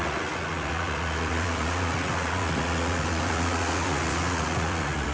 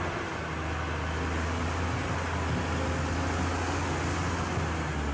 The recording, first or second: second